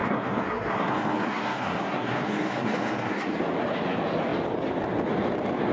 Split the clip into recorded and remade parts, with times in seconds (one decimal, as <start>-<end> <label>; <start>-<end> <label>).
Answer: 0.0-3.4 remade; 3.4-5.7 recorded